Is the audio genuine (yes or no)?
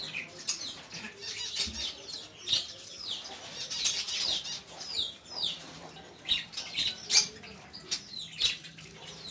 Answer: yes